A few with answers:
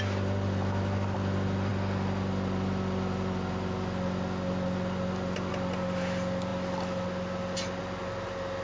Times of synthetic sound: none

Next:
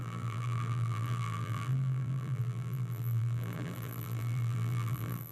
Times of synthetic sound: 0.0-5.3 (vocoder, BigVGAN v2)

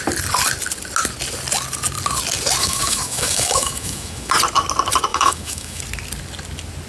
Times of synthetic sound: 2.6-4.3 (autoencoder, DAC-VAE); 5.1-5.8

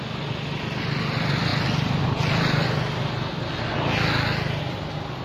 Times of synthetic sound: none

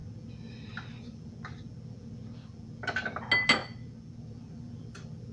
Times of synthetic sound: none